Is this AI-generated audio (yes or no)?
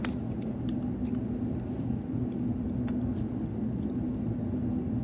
no